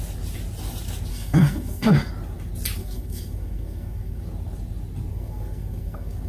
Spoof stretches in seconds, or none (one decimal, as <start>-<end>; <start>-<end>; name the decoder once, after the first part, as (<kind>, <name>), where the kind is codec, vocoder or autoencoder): 1.1-2.1 (codec, SNAC); 2.8-4.2; 5.1-6.3